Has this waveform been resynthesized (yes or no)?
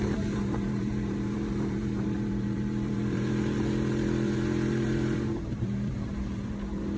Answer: yes